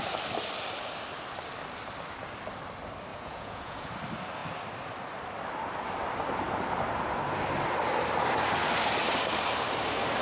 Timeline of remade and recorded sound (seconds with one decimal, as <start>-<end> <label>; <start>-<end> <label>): 0.0-3.1 recorded; 3.1-3.9 remade; 3.9-10.2 recorded